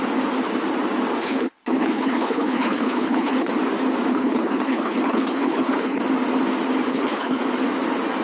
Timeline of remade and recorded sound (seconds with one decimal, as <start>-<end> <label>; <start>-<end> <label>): 0.0-1.2 recorded; 1.2-3.5 remade; 3.5-4.1 recorded; 4.1-6.0 remade; 6.0-6.9 recorded; 6.9-7.4 remade; 7.4-8.2 recorded